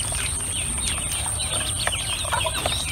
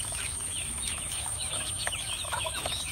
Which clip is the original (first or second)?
first